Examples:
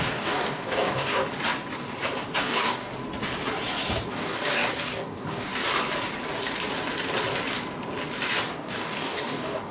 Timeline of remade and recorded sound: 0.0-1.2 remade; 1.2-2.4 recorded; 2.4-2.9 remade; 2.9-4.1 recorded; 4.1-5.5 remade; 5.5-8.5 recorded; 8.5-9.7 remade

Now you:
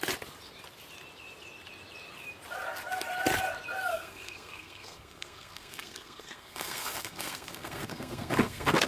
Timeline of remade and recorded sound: 0.0-3.9 recorded; 3.9-8.9 remade